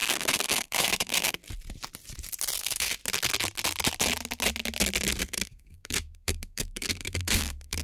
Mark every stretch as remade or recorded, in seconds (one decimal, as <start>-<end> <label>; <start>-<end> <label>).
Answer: 0.0-1.4 remade; 1.4-2.6 recorded; 2.6-3.0 remade; 3.0-5.2 recorded; 5.2-7.8 remade